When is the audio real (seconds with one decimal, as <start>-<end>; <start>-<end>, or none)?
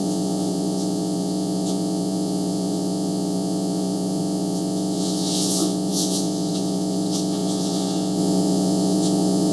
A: none